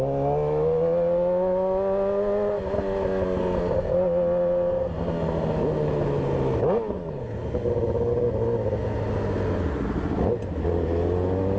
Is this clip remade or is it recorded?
recorded